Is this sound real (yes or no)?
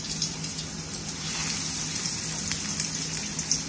yes